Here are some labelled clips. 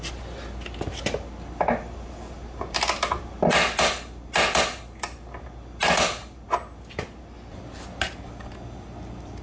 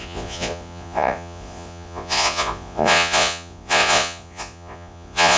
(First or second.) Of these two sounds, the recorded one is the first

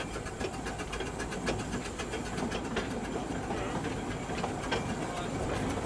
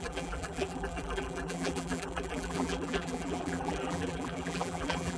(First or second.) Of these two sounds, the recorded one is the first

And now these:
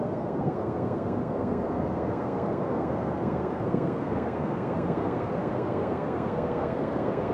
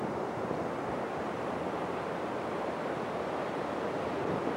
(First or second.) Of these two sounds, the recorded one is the second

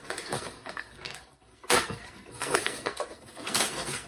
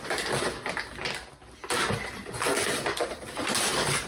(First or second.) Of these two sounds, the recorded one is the second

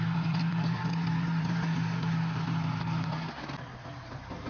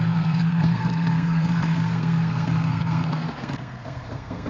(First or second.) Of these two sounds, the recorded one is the first